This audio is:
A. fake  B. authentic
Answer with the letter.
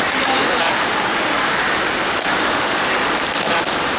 B